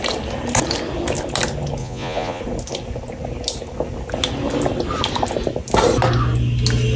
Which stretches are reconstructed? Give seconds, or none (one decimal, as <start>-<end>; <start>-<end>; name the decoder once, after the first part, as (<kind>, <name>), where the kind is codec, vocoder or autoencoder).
1.8-2.4 (vocoder, Vocos)